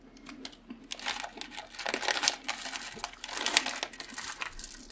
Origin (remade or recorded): recorded